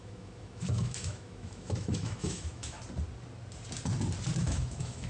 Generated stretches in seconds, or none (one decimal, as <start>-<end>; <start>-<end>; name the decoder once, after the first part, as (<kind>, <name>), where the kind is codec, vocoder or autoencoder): 0.0-2.8 (autoencoder, DAC-VAE); 4.4-5.1